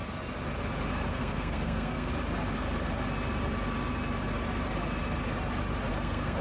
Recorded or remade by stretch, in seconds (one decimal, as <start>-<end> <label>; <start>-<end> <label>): 0.0-1.1 recorded; 1.1-2.1 remade; 2.1-5.9 recorded; 5.9-6.4 remade